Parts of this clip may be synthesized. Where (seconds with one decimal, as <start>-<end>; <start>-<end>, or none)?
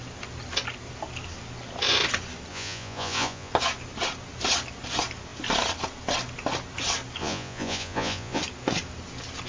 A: 2.5-3.5; 7.2-8.4